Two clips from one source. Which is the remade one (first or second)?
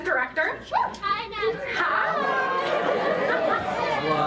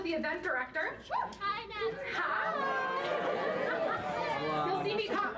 first